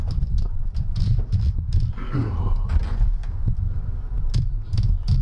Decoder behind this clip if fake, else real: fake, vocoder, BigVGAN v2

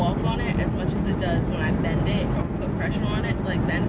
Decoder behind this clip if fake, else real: real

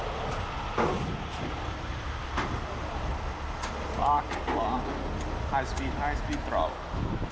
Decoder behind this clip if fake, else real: real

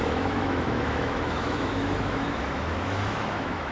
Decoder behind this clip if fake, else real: fake, autoencoder, DAC-VAE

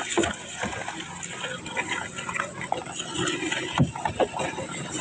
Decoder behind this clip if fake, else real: real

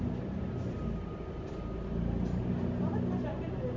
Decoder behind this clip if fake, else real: real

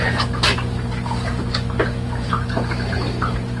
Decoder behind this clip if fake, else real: real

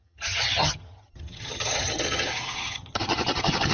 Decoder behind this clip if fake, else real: fake, vocoder, HiFi-GAN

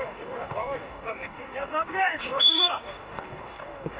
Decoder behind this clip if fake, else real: fake, codec, DAC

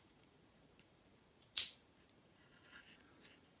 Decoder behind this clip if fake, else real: fake, vocoder, Vocos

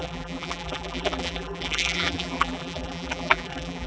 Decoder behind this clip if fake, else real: fake, vocoder, BigVGAN v2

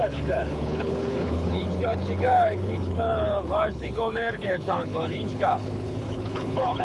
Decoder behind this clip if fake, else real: fake, codec, HILCodec